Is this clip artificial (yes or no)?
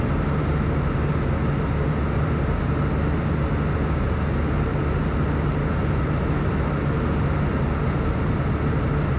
no